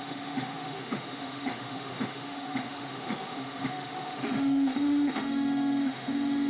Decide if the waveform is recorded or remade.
remade